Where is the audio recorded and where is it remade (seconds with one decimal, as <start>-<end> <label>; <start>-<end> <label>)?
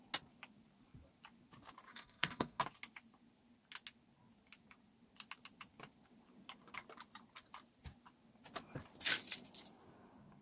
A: 0.0-1.9 recorded; 1.9-2.6 remade; 2.6-10.4 recorded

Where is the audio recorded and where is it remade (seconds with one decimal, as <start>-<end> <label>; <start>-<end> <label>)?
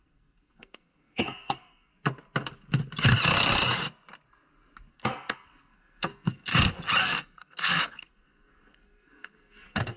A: 0.0-1.9 remade; 1.9-4.9 recorded; 4.9-6.5 remade; 6.5-7.0 recorded; 7.0-10.0 remade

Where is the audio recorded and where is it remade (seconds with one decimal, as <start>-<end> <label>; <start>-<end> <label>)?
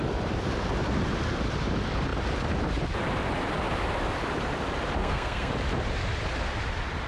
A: 0.0-5.0 recorded; 5.0-5.5 remade; 5.5-7.1 recorded